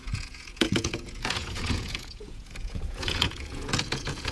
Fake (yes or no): yes